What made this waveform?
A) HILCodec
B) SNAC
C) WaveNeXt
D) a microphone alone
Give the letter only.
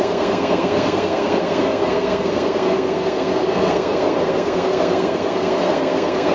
B